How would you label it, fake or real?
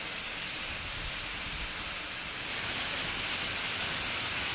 real